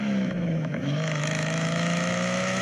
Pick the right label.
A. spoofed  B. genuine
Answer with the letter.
A